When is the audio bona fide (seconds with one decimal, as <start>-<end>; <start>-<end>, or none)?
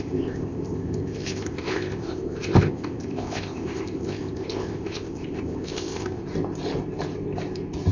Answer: 6.2-7.9